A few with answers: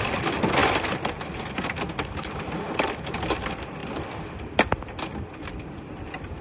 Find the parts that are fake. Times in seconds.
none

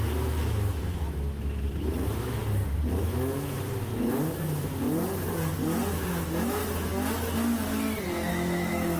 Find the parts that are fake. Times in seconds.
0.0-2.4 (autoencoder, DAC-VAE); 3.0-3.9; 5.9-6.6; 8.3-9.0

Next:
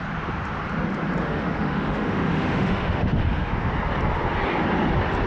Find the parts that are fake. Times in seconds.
1.2-3.7 (autoencoder, DAC-VAE)

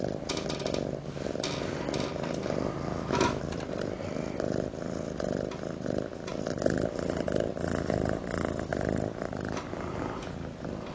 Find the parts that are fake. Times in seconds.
2.9-3.4 (autoencoder, DAC-VAE)

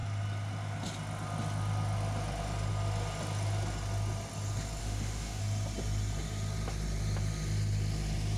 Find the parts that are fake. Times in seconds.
4.8-5.4 (autoencoder, DAC-VAE)

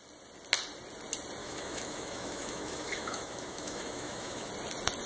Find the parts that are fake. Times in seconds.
1.4-4.5 (autoencoder, DAC-VAE)